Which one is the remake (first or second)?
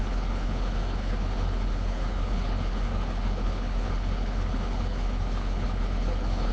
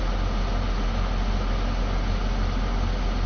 first